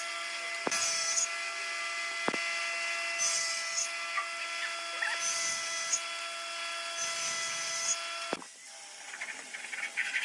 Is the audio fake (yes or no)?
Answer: no